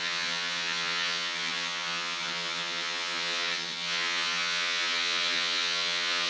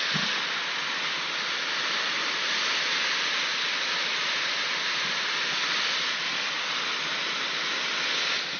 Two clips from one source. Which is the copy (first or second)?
first